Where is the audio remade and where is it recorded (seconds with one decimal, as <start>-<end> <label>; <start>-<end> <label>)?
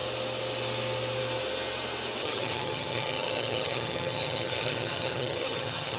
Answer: 0.0-2.2 recorded; 2.2-6.0 remade